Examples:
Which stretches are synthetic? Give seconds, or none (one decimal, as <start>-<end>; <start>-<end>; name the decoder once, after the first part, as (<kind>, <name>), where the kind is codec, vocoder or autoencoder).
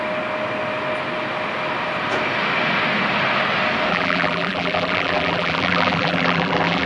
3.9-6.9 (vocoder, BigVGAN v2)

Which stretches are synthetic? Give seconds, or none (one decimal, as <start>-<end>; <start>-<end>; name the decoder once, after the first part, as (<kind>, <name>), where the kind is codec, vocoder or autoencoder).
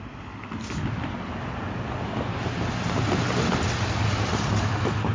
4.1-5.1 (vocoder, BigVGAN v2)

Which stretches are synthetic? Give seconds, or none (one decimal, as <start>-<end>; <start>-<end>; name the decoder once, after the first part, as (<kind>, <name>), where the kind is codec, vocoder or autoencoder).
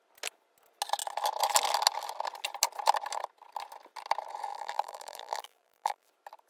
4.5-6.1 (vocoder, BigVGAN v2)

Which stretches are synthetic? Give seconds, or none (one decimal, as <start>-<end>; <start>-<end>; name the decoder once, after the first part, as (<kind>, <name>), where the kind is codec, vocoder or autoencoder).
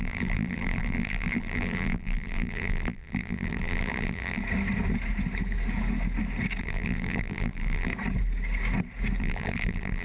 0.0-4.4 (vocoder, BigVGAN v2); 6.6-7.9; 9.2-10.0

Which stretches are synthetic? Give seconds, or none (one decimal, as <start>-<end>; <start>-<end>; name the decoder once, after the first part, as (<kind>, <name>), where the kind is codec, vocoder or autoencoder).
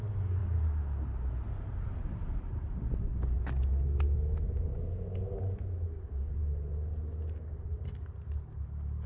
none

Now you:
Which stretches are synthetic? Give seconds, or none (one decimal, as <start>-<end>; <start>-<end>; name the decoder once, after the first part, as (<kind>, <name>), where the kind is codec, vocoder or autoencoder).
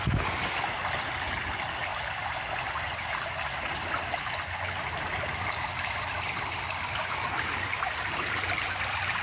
none